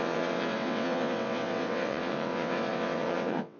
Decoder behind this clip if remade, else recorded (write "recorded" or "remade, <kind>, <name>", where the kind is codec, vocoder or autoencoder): remade, vocoder, WaveNeXt